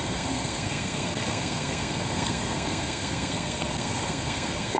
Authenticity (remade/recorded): remade